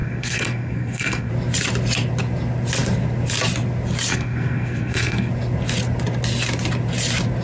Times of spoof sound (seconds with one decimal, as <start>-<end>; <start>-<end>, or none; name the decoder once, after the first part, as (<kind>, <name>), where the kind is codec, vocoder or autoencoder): 0.0-1.3 (codec, SNAC); 4.1-5.3